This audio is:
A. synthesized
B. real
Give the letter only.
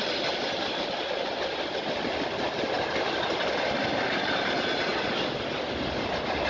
B